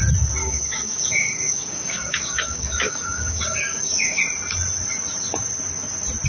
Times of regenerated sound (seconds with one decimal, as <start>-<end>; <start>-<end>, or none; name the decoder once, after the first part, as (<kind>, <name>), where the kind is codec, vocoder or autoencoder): 0.4-4.2 (codec, DAC)